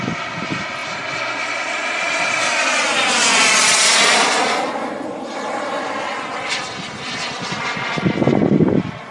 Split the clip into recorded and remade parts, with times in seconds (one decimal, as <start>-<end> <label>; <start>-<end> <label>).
0.0-9.1 recorded